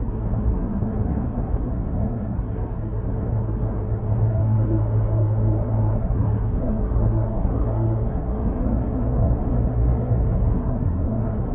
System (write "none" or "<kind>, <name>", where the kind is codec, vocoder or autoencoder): codec, SNAC